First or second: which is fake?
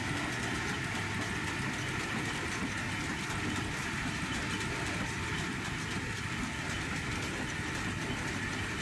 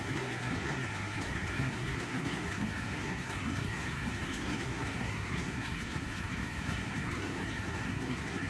second